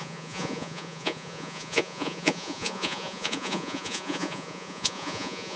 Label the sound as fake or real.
fake